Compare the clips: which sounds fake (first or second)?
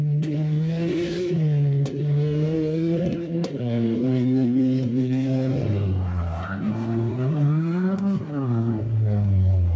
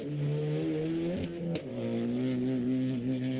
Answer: first